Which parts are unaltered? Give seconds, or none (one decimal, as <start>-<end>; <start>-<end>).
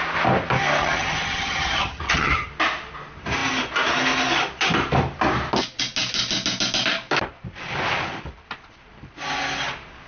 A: 0.0-0.8; 2.5-10.1